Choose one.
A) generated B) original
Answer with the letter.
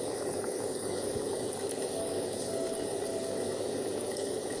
A